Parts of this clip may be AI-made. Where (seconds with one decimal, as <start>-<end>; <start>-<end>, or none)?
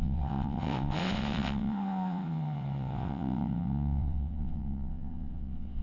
0.0-5.8